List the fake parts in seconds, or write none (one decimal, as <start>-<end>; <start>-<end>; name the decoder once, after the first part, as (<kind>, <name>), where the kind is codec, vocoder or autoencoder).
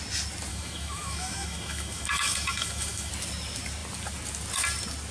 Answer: 0.5-3.1 (autoencoder, DAC-VAE)